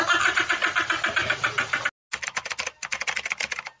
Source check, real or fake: real